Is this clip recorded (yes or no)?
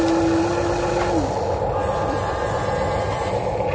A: yes